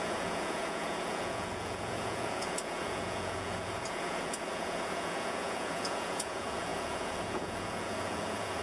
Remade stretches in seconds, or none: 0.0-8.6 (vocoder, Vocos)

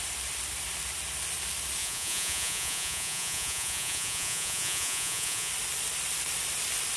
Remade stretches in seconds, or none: 1.8-5.5 (vocoder, Vocos)

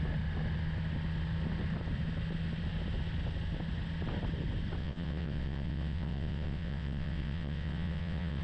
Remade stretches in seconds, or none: 4.8-8.4 (vocoder, WaveNeXt)

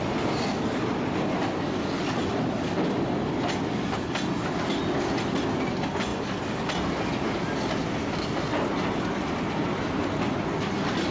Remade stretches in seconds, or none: none

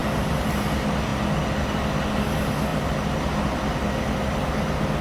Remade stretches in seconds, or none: 2.7-3.3 (vocoder, BigVGAN v2)

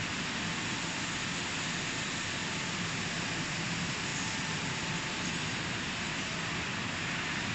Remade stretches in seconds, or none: 2.4-3.0 (vocoder, BigVGAN v2); 4.1-4.8

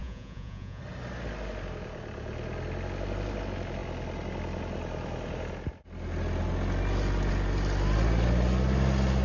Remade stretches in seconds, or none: 0.0-0.8 (vocoder, Vocos)

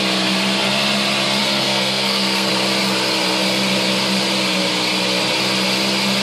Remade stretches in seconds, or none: 1.4-2.5 (codec, SNAC)